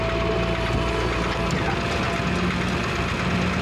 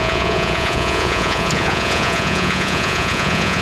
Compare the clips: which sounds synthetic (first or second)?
second